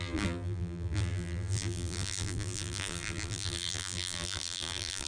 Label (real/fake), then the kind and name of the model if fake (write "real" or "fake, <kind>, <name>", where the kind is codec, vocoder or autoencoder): fake, vocoder, BigVGAN v2